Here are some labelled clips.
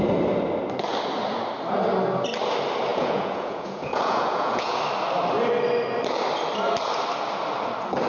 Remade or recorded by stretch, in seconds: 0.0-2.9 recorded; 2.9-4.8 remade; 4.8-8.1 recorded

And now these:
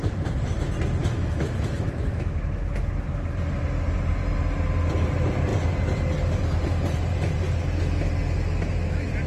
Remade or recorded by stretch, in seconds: 0.0-1.0 recorded; 1.0-2.7 remade; 2.7-9.3 recorded

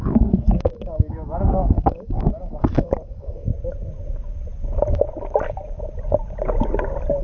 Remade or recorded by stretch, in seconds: 0.0-3.5 remade; 3.5-7.2 recorded

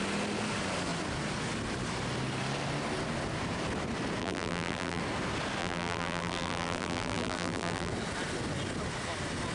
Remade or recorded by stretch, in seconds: 0.0-4.2 recorded; 4.2-5.0 remade; 5.0-5.6 recorded; 5.6-7.9 remade; 7.9-9.5 recorded